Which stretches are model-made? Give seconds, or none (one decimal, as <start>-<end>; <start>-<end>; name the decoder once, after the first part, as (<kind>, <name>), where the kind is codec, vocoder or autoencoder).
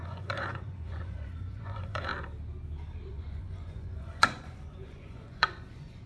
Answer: 0.0-2.1 (vocoder, Vocos); 3.1-6.1